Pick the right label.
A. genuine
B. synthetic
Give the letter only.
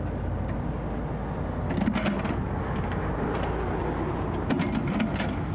A